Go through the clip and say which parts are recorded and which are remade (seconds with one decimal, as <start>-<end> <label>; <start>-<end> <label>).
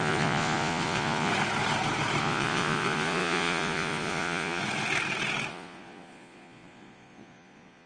0.0-1.3 remade; 1.3-2.2 recorded; 2.2-4.6 remade; 4.6-5.5 recorded; 5.5-7.9 remade